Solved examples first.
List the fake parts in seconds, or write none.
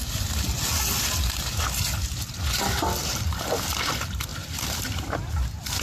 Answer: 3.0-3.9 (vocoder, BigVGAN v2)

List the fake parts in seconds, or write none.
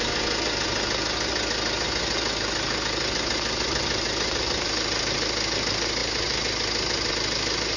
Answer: none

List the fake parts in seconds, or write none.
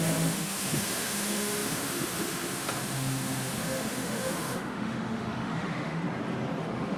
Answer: 0.0-6.0 (autoencoder, DAC-VAE); 6.6-7.0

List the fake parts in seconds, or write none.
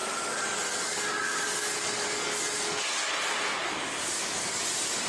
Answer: 0.0-3.1 (codec, DAC); 3.6-4.6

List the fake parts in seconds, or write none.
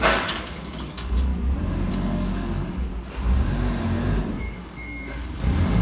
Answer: 0.0-1.3 (codec, DAC); 1.9-2.9; 4.4-5.8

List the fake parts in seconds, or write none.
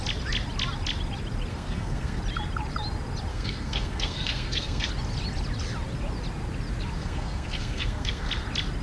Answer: 1.5-2.2 (codec, SNAC); 3.3-4.9; 7.0-8.3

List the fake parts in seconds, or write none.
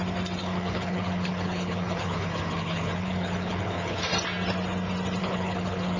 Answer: 0.4-4.0 (codec, HILCodec); 5.2-6.0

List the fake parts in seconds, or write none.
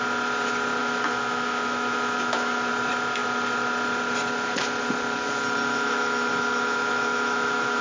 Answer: 0.8-2.7 (autoencoder, DAC-VAE); 5.7-7.8